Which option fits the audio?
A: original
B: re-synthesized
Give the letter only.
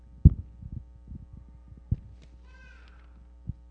A